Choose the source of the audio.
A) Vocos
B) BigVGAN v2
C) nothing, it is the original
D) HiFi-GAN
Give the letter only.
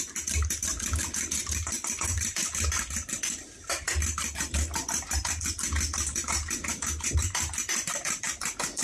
C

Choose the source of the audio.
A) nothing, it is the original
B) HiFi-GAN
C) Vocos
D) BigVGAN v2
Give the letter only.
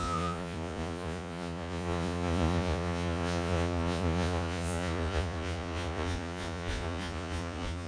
C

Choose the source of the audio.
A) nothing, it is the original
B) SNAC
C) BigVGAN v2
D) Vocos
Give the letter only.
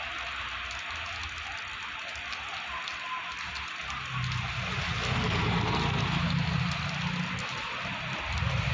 A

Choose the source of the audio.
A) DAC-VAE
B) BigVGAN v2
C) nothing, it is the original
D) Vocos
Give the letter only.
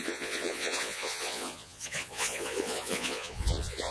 D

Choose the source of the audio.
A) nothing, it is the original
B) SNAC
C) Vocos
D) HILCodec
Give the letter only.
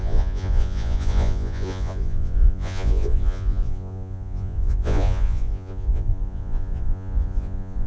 C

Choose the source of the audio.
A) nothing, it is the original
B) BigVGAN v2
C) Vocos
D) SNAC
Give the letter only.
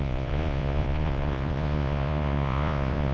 C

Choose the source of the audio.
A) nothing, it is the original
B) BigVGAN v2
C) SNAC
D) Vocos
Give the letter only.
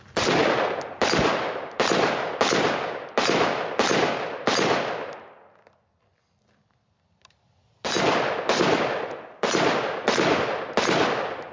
A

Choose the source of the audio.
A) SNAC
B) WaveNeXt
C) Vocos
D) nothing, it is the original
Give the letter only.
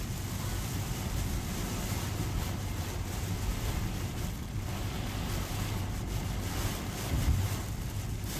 D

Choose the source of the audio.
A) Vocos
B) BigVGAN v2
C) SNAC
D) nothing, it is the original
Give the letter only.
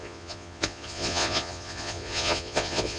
A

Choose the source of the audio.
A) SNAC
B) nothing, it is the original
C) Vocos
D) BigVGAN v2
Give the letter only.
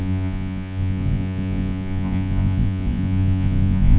C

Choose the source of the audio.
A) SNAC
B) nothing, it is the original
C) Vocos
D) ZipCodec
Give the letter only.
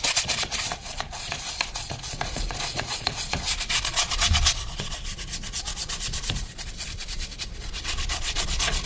C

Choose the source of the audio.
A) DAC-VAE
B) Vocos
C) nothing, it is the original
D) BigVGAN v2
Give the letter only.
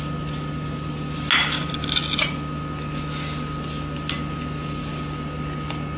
C